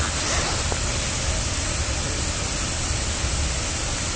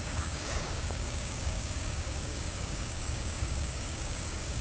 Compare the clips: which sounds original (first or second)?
first